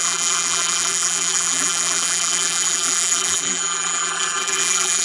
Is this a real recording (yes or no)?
no